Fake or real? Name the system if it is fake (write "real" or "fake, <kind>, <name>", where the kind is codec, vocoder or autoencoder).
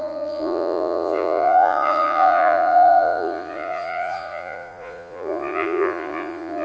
fake, vocoder, Vocos